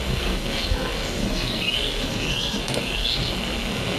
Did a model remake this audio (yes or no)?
yes